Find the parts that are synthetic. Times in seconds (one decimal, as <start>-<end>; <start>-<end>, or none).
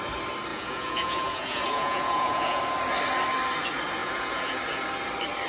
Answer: 0.5-2.6; 4.0-4.6